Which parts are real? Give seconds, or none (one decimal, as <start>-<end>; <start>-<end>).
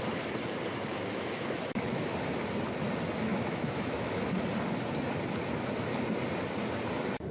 0.0-0.9; 2.1-3.3; 4.3-7.3